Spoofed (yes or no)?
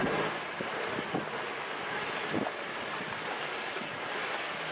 no